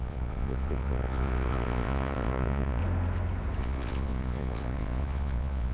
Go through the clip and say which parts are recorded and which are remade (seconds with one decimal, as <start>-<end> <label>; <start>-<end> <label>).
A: 0.0-2.8 remade; 2.8-3.6 recorded; 3.6-5.7 remade